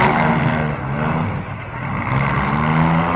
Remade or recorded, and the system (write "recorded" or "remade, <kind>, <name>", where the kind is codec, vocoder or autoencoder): recorded